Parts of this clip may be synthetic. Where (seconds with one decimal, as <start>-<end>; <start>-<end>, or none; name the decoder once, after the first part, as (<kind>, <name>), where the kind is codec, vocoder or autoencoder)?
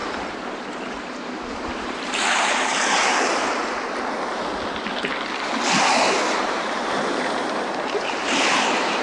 0.0-3.6 (vocoder, BigVGAN v2); 6.4-9.0